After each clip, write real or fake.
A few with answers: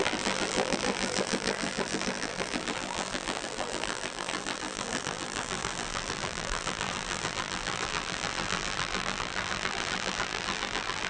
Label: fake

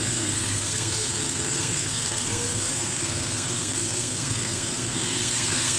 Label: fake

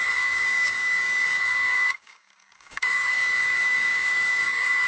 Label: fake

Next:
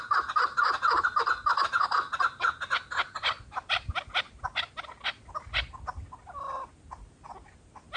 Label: real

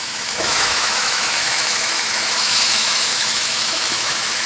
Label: fake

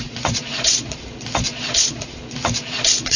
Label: fake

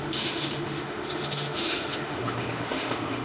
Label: fake